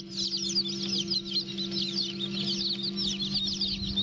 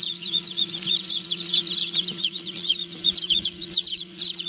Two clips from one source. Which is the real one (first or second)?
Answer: first